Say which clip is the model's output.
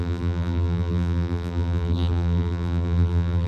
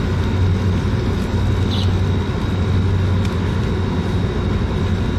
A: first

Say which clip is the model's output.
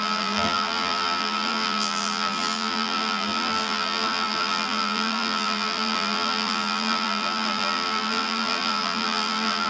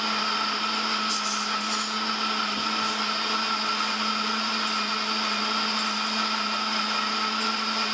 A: first